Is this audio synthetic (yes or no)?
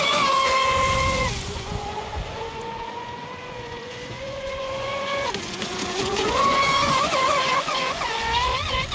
yes